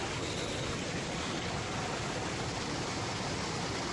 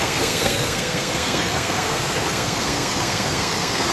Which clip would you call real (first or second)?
first